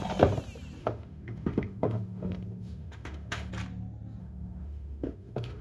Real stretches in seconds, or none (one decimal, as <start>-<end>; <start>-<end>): 0.0-0.8; 3.5-4.2